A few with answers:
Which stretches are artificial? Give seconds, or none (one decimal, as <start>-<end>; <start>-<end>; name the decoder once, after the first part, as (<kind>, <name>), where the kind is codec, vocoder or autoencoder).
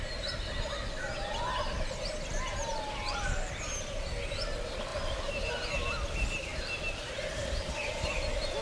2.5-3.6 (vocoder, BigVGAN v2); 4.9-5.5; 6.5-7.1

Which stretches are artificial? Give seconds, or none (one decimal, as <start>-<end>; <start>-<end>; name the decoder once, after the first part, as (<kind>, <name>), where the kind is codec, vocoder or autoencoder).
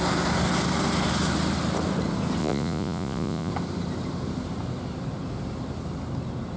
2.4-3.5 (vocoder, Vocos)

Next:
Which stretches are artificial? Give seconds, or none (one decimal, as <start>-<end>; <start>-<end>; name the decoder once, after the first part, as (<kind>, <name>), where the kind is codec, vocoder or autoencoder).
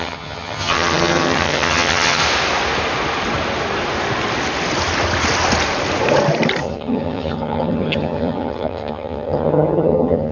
0.0-2.2 (vocoder, HiFi-GAN); 6.6-10.3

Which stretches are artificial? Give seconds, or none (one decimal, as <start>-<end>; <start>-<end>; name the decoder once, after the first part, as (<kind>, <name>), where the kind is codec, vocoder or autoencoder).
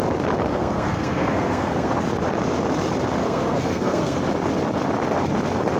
0.5-1.9 (codec, SNAC); 3.2-4.2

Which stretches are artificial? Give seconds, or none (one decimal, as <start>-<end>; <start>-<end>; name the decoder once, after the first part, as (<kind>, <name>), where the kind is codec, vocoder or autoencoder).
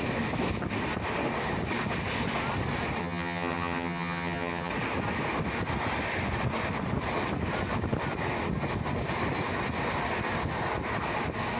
3.0-4.7 (vocoder, HiFi-GAN)